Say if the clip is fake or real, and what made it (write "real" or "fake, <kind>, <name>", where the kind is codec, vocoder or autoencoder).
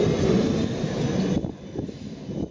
real